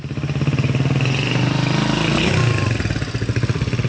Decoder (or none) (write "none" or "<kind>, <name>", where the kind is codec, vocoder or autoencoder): none